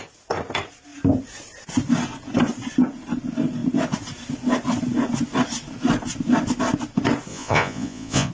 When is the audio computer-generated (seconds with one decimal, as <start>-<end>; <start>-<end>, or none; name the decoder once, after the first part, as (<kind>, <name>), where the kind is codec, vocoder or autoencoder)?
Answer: 7.3-8.3 (vocoder, Vocos)